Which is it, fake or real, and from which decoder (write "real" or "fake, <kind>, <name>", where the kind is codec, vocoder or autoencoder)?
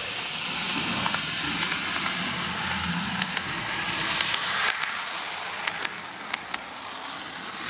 real